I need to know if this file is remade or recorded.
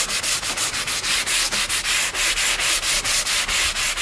recorded